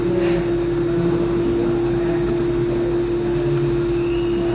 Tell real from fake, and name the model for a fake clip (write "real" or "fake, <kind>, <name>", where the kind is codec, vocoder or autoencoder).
real